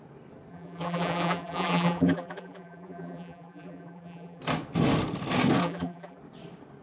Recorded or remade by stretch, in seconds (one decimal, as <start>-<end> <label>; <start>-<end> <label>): 0.0-0.5 recorded; 0.5-4.4 remade; 4.4-5.6 recorded; 5.6-6.2 remade; 6.2-6.8 recorded